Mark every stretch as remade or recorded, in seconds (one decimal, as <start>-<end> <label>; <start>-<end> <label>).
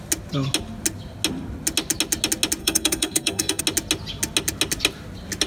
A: 0.0-2.6 recorded; 2.6-3.6 remade; 3.6-5.5 recorded